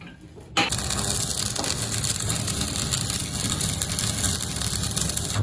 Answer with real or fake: real